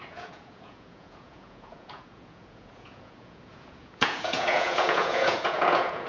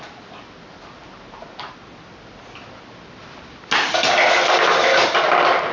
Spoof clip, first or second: first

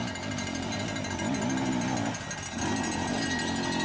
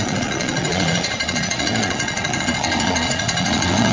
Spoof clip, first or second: second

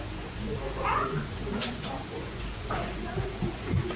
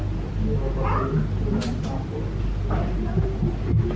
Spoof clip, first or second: first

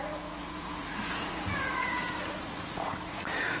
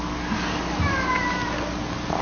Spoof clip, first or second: first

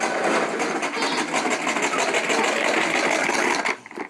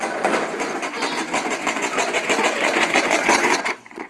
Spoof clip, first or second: second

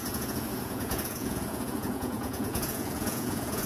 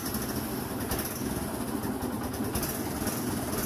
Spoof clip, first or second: first